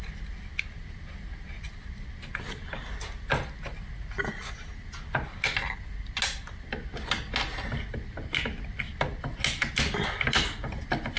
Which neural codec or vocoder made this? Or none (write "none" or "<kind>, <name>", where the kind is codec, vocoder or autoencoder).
none